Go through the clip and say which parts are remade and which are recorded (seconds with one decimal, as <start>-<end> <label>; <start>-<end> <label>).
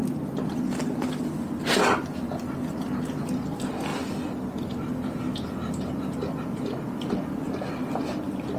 0.0-8.6 recorded